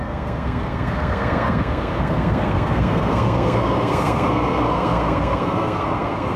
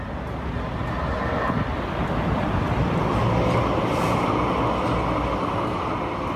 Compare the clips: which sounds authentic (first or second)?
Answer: second